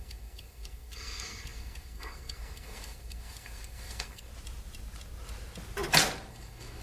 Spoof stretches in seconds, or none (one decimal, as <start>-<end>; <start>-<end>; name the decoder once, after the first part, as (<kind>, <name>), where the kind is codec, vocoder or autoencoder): 0.0-4.3 (codec, SNAC); 6.3-6.8